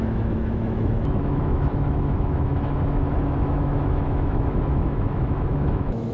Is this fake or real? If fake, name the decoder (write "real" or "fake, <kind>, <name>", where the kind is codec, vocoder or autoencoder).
fake, autoencoder, DAC-VAE